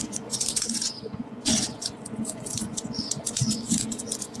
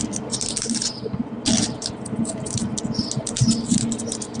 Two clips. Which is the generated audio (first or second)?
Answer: first